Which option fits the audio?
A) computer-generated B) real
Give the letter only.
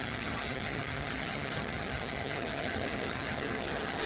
A